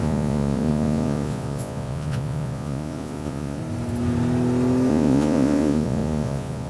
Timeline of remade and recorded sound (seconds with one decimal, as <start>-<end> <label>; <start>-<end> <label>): 0.0-3.6 remade; 3.6-4.9 recorded; 4.9-6.7 remade